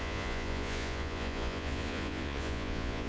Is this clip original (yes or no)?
no